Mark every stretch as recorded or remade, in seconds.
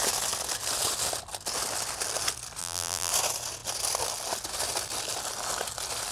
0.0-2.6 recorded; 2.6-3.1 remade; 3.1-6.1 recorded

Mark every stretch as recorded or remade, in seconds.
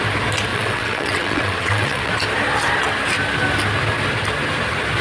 0.0-0.5 recorded; 0.5-2.1 remade; 2.1-5.0 recorded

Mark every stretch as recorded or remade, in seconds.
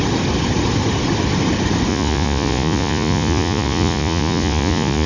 0.0-1.9 recorded; 1.9-5.1 remade